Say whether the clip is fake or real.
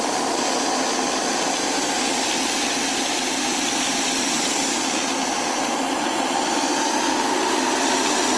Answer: real